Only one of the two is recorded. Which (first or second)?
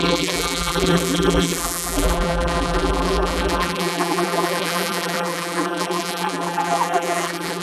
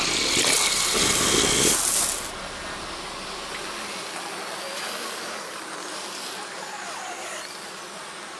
second